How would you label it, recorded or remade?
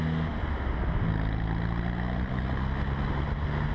recorded